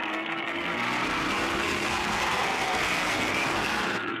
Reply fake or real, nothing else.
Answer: fake